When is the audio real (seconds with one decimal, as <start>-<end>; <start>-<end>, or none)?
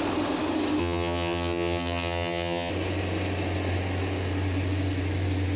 0.0-0.8; 2.7-5.6